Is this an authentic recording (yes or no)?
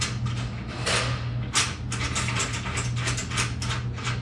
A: yes